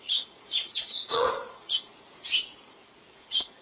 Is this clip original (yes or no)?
no